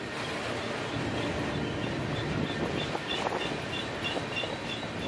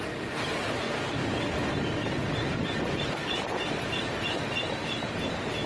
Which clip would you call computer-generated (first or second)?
second